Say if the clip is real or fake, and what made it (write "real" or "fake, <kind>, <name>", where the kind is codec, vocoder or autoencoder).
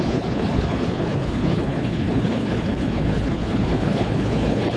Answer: fake, codec, HILCodec